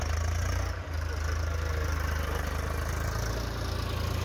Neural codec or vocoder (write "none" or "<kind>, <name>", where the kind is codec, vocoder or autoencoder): none